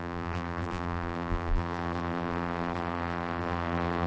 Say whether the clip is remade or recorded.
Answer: remade